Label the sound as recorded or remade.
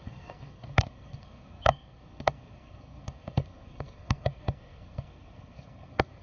remade